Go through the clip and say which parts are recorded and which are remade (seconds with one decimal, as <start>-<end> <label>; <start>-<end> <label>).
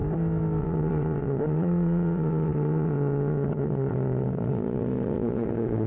0.0-0.6 recorded; 0.6-5.9 remade